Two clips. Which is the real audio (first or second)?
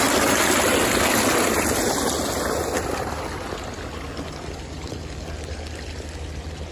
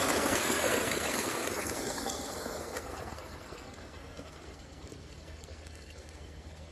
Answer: first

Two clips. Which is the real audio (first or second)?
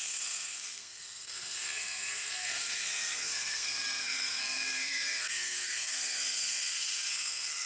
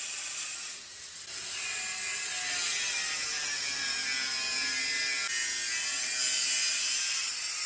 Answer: second